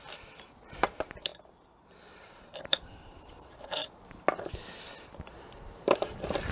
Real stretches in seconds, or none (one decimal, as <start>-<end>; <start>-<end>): 3.8-4.8